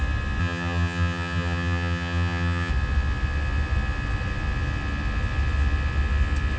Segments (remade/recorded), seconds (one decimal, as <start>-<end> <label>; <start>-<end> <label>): 0.0-0.4 recorded; 0.4-2.7 remade; 2.7-6.6 recorded